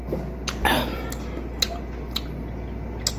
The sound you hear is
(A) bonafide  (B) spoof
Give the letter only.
A